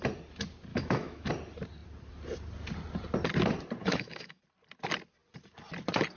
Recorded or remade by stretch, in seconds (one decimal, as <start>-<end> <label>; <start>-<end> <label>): 0.0-0.7 recorded; 0.7-1.3 remade; 1.3-3.8 recorded; 3.8-4.4 remade; 4.4-6.2 recorded